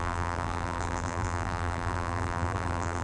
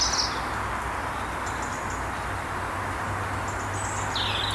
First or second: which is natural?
second